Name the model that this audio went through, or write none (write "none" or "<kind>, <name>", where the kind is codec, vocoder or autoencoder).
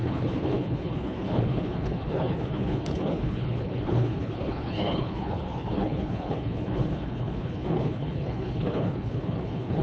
codec, HILCodec